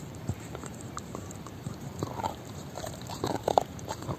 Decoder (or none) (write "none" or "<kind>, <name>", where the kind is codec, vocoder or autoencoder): vocoder, BigVGAN v2